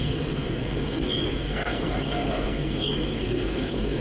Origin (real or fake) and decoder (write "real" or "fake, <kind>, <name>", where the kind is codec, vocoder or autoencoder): fake, codec, SNAC